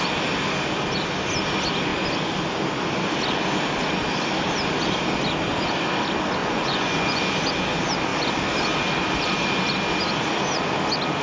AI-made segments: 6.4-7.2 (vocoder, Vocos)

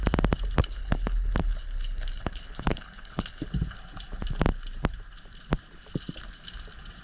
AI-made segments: 0.6-3.5 (codec, HILCodec)

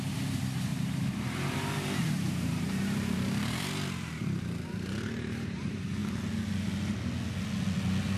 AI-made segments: 0.0-6.0 (vocoder, BigVGAN v2)

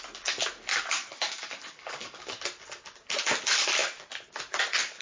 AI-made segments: 0.7-2.2 (codec, DAC)

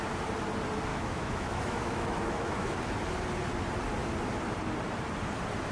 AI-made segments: 0.9-2.8 (autoencoder, DAC-VAE)

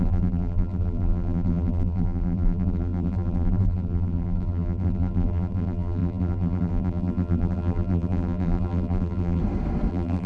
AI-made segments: 0.0-9.4 (vocoder, BigVGAN v2); 9.9-10.3

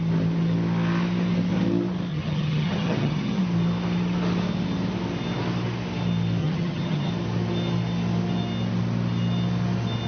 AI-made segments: 2.1-3.4 (vocoder, HiFi-GAN); 6.4-7.1

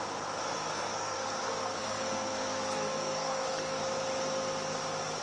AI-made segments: 0.7-3.8 (codec, SNAC)